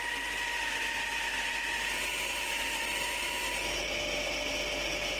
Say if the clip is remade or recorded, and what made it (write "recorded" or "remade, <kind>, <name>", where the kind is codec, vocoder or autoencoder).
recorded